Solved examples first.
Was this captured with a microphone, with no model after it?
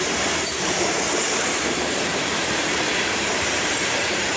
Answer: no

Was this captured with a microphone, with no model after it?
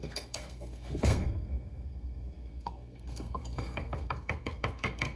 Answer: no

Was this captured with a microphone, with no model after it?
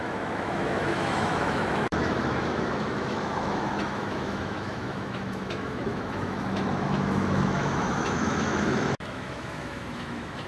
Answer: no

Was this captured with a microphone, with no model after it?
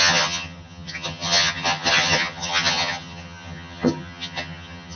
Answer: no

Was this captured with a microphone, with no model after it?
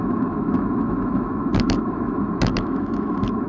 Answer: no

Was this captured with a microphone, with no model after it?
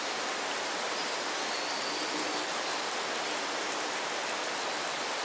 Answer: yes